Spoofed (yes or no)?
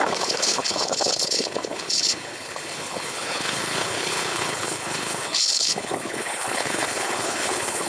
yes